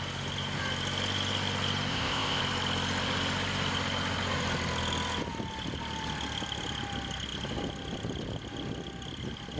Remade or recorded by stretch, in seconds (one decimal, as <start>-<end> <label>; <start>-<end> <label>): 0.0-1.9 recorded; 1.9-2.4 remade; 2.4-9.6 recorded